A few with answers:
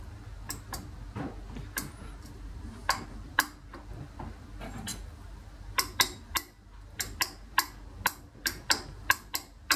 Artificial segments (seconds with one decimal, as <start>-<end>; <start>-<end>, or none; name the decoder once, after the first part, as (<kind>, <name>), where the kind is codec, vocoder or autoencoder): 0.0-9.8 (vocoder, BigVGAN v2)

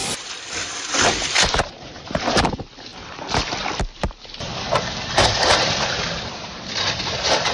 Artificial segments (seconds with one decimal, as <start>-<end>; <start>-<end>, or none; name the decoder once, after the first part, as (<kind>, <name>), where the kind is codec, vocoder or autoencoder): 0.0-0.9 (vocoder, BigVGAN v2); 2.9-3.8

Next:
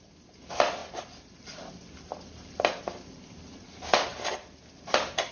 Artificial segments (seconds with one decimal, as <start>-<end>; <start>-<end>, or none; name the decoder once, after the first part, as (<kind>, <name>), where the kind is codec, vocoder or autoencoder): 0.8-2.8 (vocoder, BigVGAN v2); 4.1-5.3